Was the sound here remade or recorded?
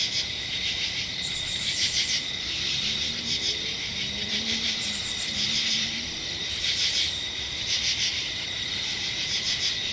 remade